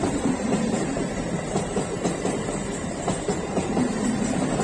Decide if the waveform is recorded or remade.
remade